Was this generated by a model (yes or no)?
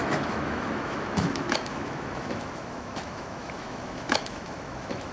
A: yes